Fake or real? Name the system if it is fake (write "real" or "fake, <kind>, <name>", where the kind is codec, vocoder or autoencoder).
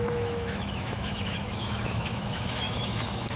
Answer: fake, autoencoder, DAC-VAE